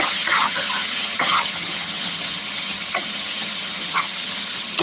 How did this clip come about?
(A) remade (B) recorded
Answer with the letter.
A